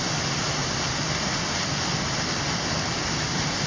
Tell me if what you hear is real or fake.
real